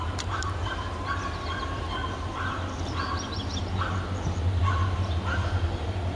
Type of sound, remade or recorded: recorded